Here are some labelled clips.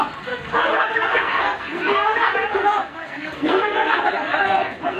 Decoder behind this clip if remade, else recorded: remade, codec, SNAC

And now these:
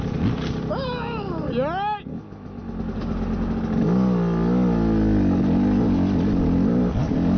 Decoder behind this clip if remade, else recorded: recorded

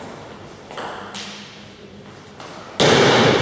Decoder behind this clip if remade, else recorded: recorded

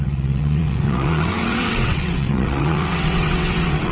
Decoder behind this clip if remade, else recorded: remade, vocoder, WaveNeXt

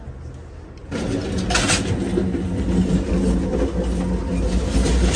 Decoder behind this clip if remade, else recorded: recorded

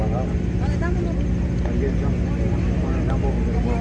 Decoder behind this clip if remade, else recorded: recorded